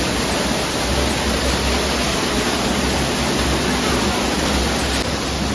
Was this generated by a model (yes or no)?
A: no